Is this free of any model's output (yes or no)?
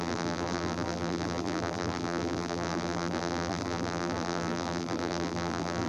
no